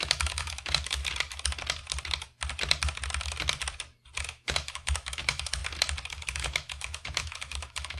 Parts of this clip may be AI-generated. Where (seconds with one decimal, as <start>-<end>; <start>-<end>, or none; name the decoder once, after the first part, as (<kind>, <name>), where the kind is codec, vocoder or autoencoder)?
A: 0.0-1.0 (autoencoder, DAC-VAE); 4.2-5.6; 6.1-8.0